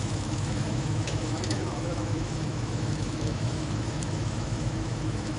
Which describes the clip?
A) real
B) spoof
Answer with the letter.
B